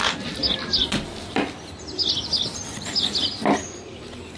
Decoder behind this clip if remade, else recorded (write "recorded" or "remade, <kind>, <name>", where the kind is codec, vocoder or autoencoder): recorded